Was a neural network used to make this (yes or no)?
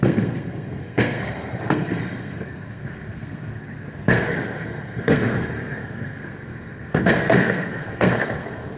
yes